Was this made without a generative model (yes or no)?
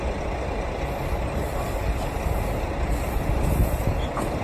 yes